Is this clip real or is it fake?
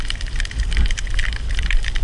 fake